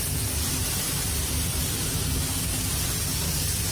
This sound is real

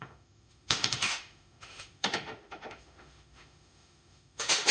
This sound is fake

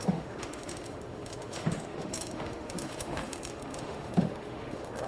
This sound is fake